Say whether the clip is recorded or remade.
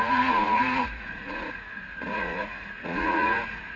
remade